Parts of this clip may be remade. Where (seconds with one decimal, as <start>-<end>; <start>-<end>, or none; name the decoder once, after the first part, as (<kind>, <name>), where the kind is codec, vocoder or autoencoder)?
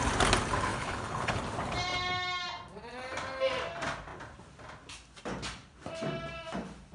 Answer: 0.7-1.4 (codec, HILCodec)